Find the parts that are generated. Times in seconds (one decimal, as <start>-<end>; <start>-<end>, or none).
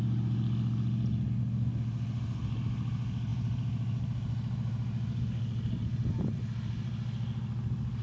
none